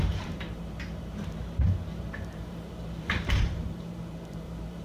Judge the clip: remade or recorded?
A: remade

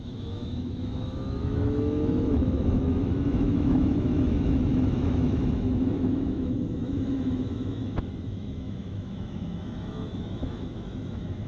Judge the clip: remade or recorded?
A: remade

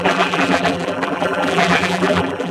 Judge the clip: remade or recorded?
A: remade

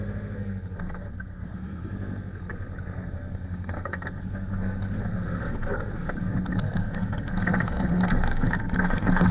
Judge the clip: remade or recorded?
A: remade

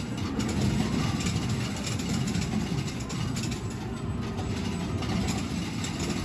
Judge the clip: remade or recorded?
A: recorded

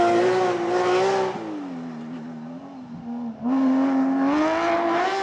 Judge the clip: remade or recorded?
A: recorded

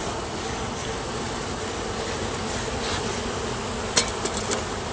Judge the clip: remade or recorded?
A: recorded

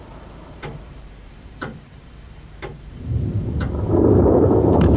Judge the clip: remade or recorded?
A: remade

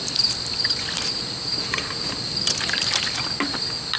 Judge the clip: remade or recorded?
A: recorded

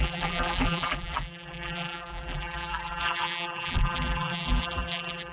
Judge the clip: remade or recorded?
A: remade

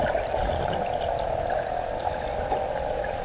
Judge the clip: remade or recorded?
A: recorded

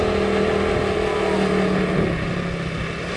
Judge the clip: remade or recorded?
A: recorded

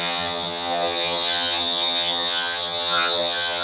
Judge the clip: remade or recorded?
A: remade